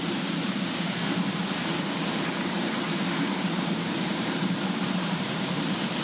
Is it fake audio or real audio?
fake